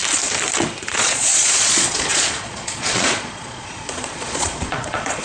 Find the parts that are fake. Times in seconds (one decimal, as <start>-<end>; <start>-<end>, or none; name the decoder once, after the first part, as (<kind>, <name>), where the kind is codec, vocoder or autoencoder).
0.8-5.2 (vocoder, Vocos)